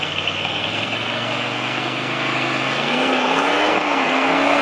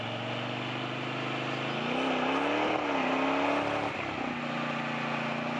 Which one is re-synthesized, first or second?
first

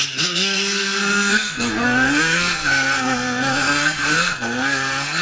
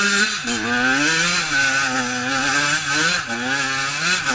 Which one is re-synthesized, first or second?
first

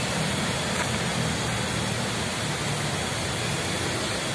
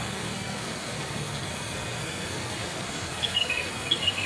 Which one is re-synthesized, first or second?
second